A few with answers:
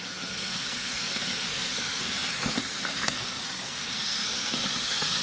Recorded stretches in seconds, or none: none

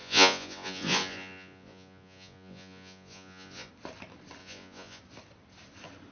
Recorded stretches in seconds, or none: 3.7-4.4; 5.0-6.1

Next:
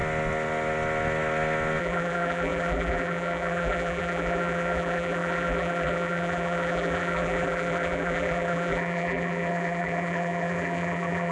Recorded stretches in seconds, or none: 0.0-1.8